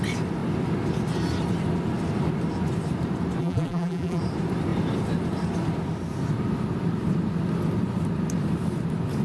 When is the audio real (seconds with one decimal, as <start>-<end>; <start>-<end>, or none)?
0.0-3.4; 4.2-9.2